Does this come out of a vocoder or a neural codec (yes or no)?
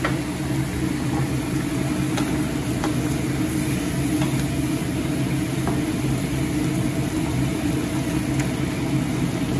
no